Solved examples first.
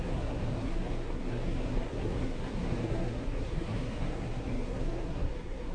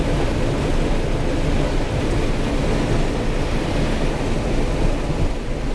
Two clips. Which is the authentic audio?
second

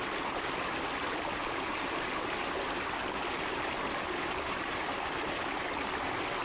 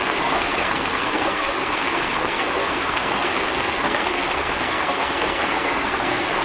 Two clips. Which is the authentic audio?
first